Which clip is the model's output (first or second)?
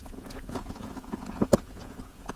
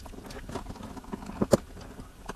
first